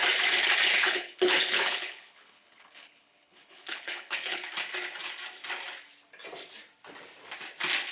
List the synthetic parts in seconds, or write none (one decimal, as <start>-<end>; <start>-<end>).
0.8-4.5